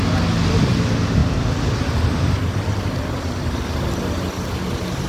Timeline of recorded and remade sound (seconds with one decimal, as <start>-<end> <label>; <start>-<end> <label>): 0.0-5.1 recorded